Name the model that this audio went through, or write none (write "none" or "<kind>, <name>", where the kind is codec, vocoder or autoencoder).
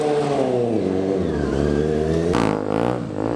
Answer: none